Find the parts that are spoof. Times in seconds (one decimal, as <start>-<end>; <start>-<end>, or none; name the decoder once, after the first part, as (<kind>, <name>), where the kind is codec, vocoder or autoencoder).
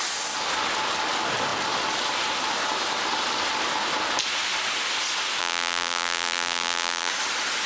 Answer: 5.4-7.1 (vocoder, BigVGAN v2)